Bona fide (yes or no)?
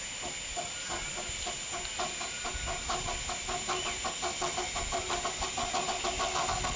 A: yes